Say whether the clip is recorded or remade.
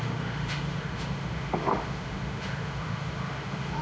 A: remade